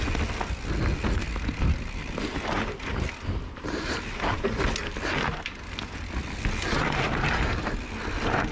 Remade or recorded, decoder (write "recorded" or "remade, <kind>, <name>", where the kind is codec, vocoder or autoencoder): recorded